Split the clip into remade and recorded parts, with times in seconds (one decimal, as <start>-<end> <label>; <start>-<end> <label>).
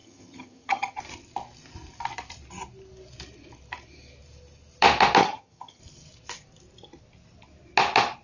0.0-1.0 remade; 1.0-5.2 recorded; 5.2-5.8 remade; 5.8-8.2 recorded